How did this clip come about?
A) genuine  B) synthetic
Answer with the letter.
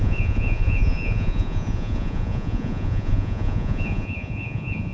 B